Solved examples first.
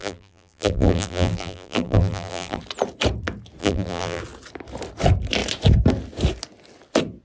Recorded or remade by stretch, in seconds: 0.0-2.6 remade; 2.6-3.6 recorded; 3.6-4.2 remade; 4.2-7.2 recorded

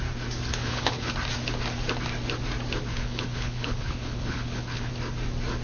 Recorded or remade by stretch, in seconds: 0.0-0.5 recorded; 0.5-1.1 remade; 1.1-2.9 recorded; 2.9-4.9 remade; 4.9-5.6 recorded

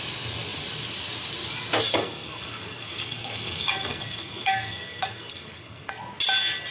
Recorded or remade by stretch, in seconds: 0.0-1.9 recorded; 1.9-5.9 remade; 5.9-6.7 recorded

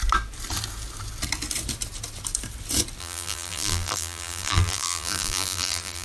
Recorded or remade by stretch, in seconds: 0.0-3.0 recorded; 3.0-6.0 remade

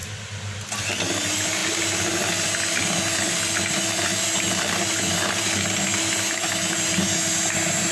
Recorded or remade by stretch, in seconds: 0.0-7.9 recorded

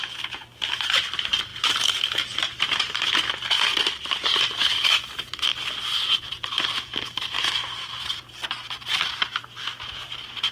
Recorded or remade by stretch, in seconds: 0.0-5.5 remade; 5.5-10.5 recorded